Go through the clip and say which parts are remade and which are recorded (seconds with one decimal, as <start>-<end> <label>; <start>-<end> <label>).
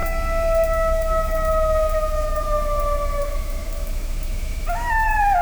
0.0-5.4 remade